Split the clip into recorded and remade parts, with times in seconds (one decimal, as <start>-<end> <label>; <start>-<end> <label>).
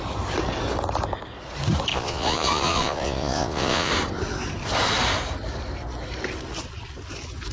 0.0-1.9 recorded; 1.9-3.9 remade; 3.9-7.5 recorded